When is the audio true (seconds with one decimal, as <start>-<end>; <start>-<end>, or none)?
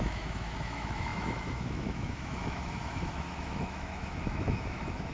none